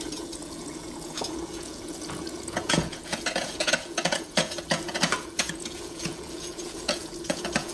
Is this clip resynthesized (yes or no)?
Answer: yes